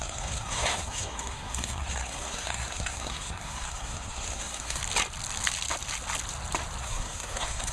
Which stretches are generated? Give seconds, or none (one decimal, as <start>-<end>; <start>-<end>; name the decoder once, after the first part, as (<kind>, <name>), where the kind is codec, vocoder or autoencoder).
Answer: 0.0-4.8 (codec, SNAC); 6.8-7.7